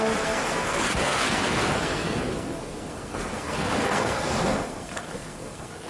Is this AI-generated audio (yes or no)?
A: yes